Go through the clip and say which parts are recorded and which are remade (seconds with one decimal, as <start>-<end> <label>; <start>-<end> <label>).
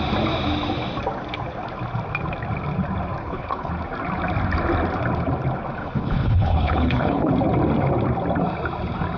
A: 0.0-3.2 recorded; 3.2-3.7 remade; 3.7-5.8 recorded; 5.8-7.3 remade; 7.3-9.2 recorded